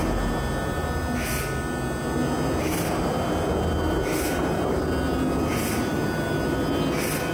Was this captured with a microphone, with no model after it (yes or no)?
yes